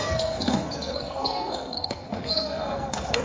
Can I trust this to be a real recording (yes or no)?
no